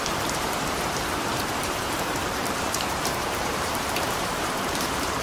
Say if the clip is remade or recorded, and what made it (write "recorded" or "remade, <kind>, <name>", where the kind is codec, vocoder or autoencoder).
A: remade, vocoder, BigVGAN v2